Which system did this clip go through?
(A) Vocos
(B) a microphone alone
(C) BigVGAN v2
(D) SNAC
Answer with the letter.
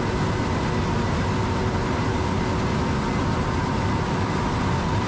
B